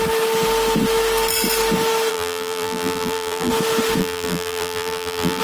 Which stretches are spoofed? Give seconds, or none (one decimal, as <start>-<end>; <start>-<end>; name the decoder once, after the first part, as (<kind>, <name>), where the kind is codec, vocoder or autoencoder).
2.1-3.5 (vocoder, BigVGAN v2); 4.0-5.4